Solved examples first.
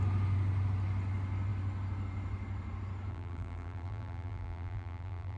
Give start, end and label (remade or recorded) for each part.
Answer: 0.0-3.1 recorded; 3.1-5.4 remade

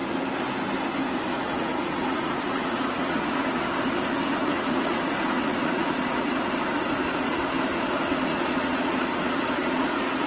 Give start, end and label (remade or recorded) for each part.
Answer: 0.0-1.3 recorded; 1.3-3.4 remade; 3.4-4.3 recorded; 4.3-7.4 remade; 7.4-8.1 recorded; 8.1-10.3 remade

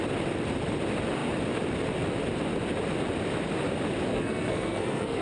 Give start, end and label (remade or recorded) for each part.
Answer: 0.0-4.1 recorded; 4.1-5.2 remade

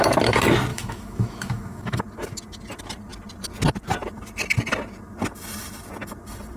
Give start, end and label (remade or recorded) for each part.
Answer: 0.0-0.7 recorded; 0.7-2.0 remade; 2.0-6.6 recorded

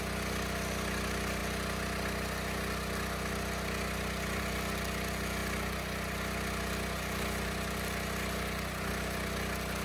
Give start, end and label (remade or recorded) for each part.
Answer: 0.0-9.8 recorded

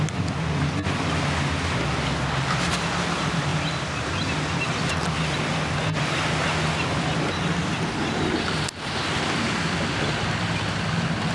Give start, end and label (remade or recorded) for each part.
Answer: 0.0-11.3 recorded

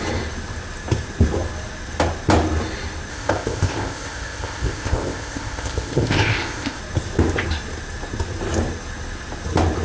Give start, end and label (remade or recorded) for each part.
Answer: 0.0-3.1 recorded; 3.1-6.8 remade; 6.8-9.8 recorded

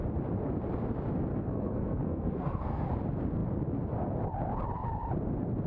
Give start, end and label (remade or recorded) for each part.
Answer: 0.0-1.3 recorded; 1.3-2.9 remade; 2.9-5.7 recorded